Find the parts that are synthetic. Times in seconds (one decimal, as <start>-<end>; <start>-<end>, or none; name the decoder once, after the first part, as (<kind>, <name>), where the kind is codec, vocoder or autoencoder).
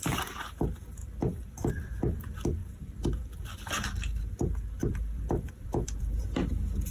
2.6-3.7 (vocoder, BigVGAN v2); 4.8-6.2